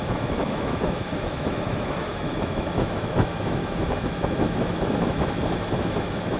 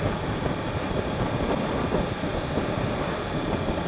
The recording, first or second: second